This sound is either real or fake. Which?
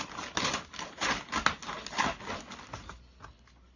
real